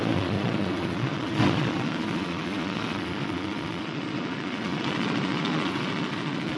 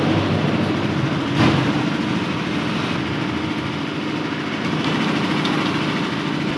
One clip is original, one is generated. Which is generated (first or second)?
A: first